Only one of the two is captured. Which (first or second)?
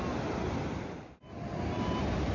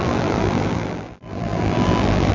first